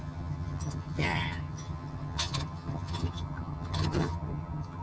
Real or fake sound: fake